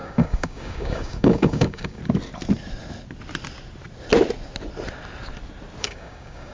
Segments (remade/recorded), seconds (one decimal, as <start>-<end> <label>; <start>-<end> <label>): 0.0-2.0 remade; 2.0-5.8 recorded; 5.8-6.5 remade